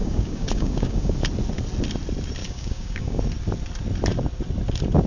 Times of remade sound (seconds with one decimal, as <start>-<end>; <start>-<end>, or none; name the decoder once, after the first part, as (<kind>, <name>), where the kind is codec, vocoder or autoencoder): 0.0-1.2 (codec, DAC); 2.4-3.2